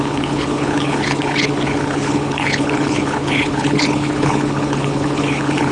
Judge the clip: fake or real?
fake